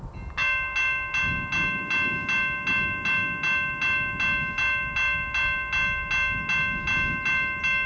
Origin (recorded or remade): recorded